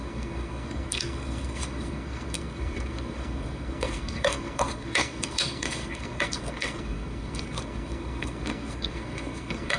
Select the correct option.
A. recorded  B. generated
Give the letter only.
B